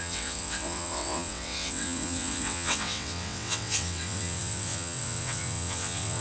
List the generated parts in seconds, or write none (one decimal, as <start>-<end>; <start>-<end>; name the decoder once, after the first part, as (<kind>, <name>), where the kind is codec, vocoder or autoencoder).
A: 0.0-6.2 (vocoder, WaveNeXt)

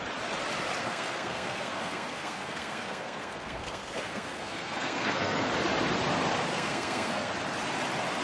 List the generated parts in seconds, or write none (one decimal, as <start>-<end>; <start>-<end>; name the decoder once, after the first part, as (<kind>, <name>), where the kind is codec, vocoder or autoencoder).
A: 0.8-5.4 (codec, SNAC); 6.5-7.3

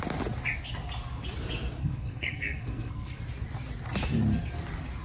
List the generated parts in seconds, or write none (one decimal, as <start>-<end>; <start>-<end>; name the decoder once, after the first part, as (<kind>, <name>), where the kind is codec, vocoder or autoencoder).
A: 1.8-3.2 (codec, SNAC)

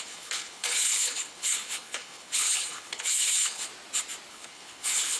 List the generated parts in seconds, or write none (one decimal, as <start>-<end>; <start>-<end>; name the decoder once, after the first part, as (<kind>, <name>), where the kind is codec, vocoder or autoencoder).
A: 0.0-3.7 (codec, HILCodec); 4.3-5.2

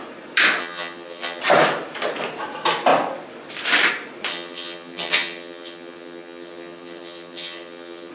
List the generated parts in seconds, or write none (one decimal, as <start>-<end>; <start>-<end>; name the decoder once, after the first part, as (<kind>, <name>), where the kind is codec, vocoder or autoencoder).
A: 0.6-1.4 (vocoder, HiFi-GAN); 4.3-8.1

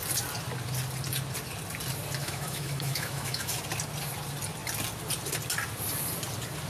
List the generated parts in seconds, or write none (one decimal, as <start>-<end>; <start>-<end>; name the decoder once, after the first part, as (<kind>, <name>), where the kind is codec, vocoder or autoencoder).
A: 2.2-3.6 (autoencoder, DAC-VAE)

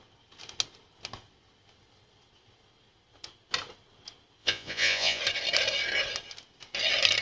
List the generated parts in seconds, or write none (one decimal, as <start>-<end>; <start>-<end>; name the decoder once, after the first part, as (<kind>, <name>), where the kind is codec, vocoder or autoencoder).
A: 4.4-5.2 (vocoder, Vocos)

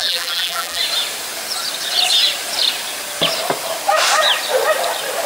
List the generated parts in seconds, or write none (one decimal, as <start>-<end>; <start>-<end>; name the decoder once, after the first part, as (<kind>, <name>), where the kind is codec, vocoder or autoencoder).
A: 0.0-0.8 (vocoder, BigVGAN v2)